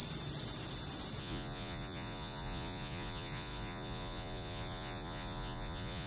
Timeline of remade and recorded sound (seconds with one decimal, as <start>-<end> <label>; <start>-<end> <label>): 0.0-1.2 recorded; 1.2-6.1 remade